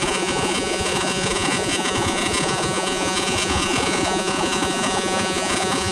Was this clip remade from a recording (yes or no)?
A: yes